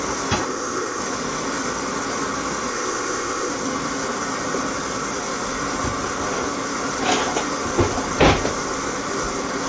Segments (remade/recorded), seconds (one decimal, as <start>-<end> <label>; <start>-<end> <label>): 0.0-0.4 recorded; 0.4-1.0 remade; 1.0-2.7 recorded; 2.7-3.5 remade; 3.5-9.7 recorded